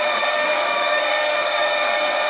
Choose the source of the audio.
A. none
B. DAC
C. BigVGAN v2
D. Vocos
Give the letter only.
B